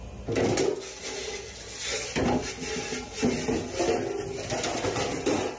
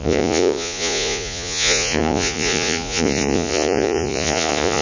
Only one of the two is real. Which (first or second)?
first